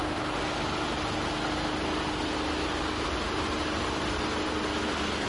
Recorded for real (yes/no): yes